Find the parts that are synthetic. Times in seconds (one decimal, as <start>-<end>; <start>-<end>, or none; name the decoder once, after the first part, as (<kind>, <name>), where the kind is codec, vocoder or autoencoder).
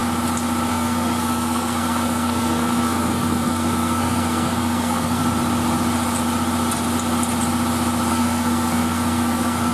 0.7-5.2 (codec, SNAC); 8.1-9.7